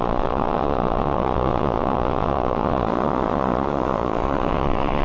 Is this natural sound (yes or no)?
no